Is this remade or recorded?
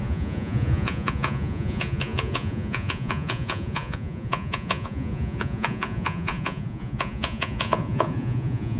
remade